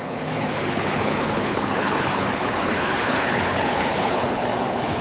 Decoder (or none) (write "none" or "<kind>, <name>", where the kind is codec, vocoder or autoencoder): codec, HILCodec